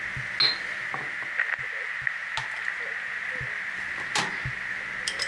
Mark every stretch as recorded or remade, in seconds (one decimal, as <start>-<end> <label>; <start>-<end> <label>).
0.0-5.3 recorded